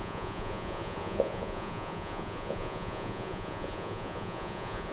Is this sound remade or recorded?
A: remade